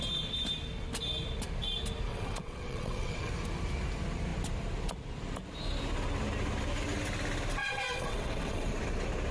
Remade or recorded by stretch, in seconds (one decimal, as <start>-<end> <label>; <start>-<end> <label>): 0.0-2.1 recorded; 2.1-3.3 remade; 3.3-7.6 recorded; 7.6-8.7 remade; 8.7-9.3 recorded